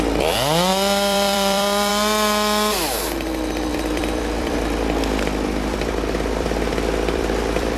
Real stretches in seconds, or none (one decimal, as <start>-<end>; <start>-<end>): 0.0-0.7; 1.9-3.7